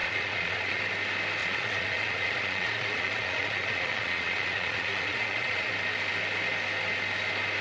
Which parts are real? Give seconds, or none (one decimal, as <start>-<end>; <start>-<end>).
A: 0.8-1.4; 5.7-7.6